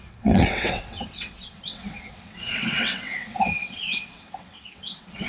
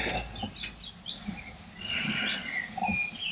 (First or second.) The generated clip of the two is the first